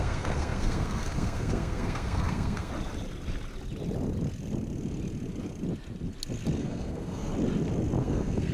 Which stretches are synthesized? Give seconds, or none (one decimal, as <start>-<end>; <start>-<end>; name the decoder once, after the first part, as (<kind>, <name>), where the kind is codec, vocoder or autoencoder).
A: 0.0-2.7 (codec, SNAC); 6.6-7.3; 8.0-8.5